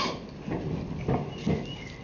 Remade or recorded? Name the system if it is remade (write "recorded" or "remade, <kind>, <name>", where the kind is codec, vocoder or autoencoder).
recorded